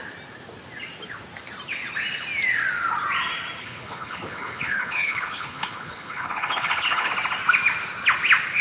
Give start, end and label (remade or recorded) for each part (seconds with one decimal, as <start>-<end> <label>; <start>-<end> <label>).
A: 0.0-3.6 recorded; 3.6-7.1 remade; 7.1-8.6 recorded